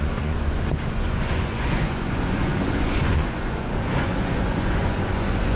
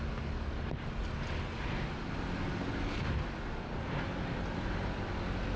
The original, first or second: second